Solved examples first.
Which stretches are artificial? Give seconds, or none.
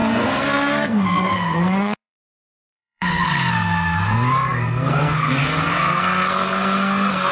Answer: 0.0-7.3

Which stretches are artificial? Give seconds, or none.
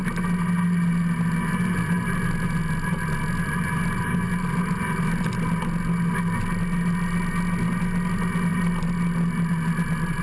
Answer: none